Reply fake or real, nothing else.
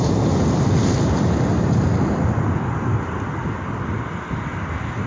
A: real